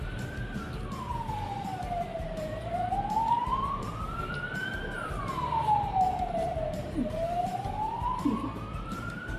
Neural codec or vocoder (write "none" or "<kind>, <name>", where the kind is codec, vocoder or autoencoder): vocoder, BigVGAN v2